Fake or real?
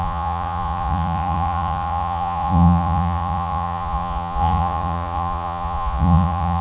fake